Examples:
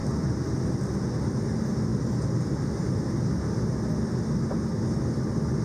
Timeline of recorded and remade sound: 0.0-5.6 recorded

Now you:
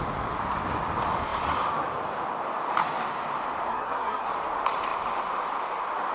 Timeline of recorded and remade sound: 0.0-3.7 recorded; 3.7-4.3 remade; 4.3-6.1 recorded

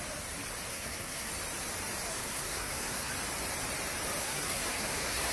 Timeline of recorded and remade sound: 0.0-0.7 recorded; 0.7-1.3 remade; 1.3-2.2 recorded; 2.2-3.1 remade; 3.1-4.2 recorded; 4.2-5.3 remade

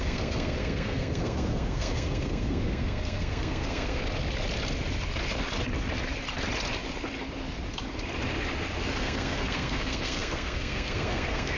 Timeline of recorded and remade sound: 0.0-4.0 remade; 4.0-9.0 recorded; 9.0-11.6 remade

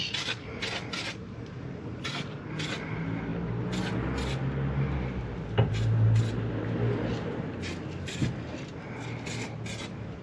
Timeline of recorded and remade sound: 0.0-10.2 recorded